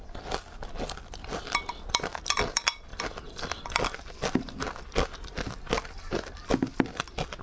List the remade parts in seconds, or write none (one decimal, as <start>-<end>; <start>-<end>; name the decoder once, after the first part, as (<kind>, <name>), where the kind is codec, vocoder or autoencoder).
none